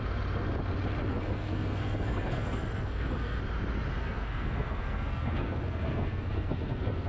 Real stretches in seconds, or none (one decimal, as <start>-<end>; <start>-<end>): 0.0-1.1; 3.4-4.0